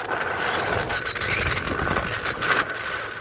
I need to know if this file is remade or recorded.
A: recorded